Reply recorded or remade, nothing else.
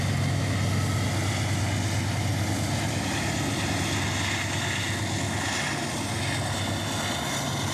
recorded